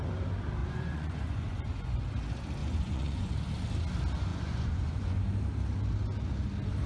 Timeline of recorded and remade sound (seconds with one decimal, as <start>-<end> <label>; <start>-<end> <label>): 0.0-0.6 recorded; 0.6-2.0 remade; 2.0-2.6 recorded; 2.6-3.3 remade; 3.3-4.3 recorded; 4.3-5.2 remade; 5.2-6.9 recorded